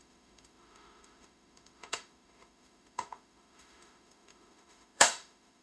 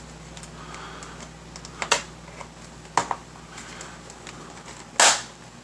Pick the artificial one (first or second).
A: first